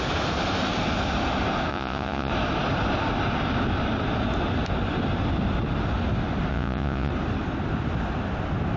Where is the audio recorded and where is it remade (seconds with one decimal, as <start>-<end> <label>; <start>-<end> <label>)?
0.0-1.7 recorded; 1.7-2.3 remade; 2.3-6.5 recorded; 6.5-7.1 remade; 7.1-8.8 recorded